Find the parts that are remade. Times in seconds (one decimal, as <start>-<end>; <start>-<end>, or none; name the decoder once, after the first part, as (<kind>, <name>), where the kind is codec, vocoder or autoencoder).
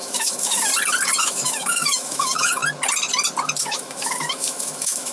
0.0-0.7 (autoencoder, DAC-VAE); 1.2-2.6; 3.6-5.1